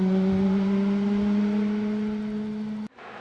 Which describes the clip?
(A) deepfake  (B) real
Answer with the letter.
B